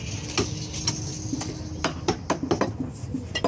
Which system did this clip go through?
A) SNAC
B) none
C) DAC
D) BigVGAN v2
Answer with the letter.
B